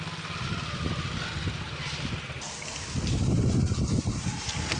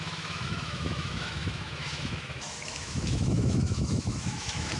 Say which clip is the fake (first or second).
second